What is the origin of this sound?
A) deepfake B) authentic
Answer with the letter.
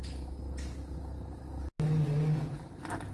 B